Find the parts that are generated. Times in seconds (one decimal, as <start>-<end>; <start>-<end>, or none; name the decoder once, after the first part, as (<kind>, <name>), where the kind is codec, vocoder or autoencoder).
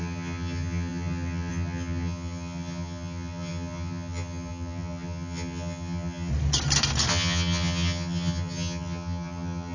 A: 0.0-6.3 (vocoder, HiFi-GAN); 7.1-9.7